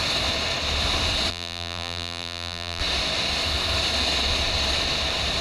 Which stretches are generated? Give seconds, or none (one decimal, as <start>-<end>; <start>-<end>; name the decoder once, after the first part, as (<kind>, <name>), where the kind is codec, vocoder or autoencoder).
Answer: 1.3-2.8 (vocoder, BigVGAN v2)